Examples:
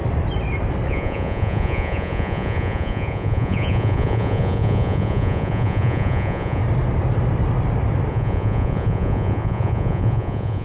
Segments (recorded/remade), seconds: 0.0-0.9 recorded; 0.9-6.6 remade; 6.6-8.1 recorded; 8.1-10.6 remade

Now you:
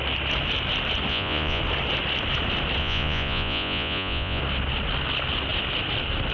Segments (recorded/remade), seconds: 0.0-1.1 recorded; 1.1-1.6 remade; 1.6-2.8 recorded; 2.8-4.4 remade; 4.4-6.3 recorded

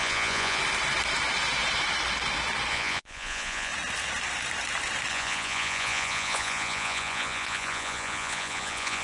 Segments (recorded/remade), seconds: 0.0-0.6 remade; 0.6-2.7 recorded; 2.7-3.7 remade; 3.7-5.1 recorded; 5.1-9.0 remade

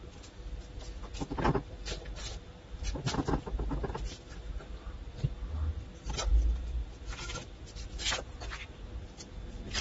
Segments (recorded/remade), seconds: 0.0-9.8 recorded

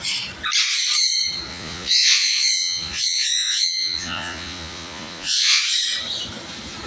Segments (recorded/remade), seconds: 0.0-1.5 recorded; 1.5-5.6 remade; 5.6-6.9 recorded

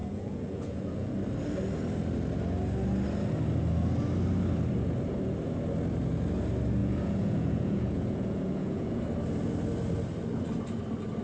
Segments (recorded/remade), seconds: 0.0-1.1 remade; 1.1-6.8 recorded; 6.8-9.0 remade; 9.0-11.2 recorded

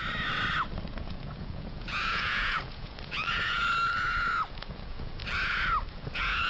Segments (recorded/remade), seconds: 0.0-0.9 recorded; 0.9-3.6 remade; 3.6-4.5 recorded; 4.5-5.2 remade; 5.2-5.9 recorded; 5.9-6.5 remade

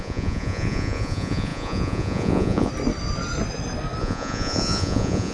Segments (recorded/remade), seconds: 0.0-2.7 remade; 2.7-4.0 recorded; 4.0-5.3 remade